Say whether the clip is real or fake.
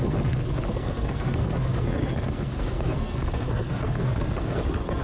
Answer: fake